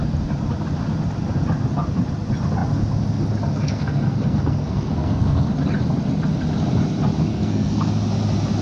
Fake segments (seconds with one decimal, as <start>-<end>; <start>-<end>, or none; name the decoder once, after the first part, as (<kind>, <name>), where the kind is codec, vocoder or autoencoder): 3.6-5.5 (codec, SNAC); 7.3-7.9